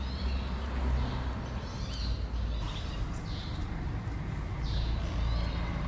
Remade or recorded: recorded